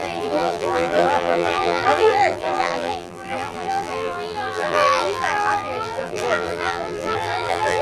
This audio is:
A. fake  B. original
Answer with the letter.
A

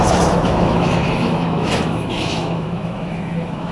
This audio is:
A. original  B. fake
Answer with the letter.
B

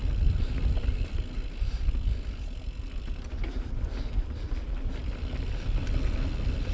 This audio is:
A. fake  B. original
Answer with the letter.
B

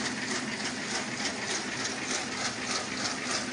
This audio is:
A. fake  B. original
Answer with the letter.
B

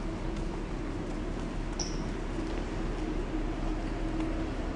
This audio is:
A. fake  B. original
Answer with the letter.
B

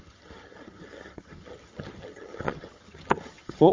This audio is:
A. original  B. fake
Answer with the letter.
B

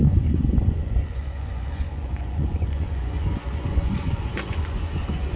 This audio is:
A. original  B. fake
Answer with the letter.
B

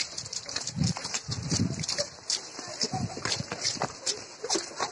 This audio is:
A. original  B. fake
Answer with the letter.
B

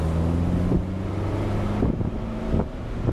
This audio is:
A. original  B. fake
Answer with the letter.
A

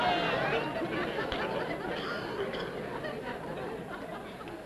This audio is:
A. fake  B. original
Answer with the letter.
B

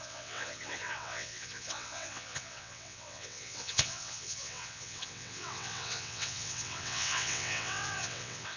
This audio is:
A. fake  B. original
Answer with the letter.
A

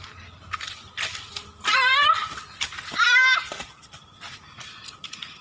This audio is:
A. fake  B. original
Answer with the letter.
A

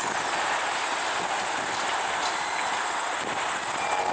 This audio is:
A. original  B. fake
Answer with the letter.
A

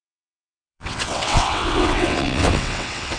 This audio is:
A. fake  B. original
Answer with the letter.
A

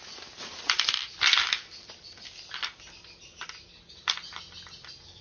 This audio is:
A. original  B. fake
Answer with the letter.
A